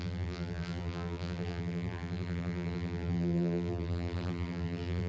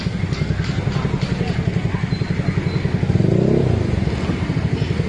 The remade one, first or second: first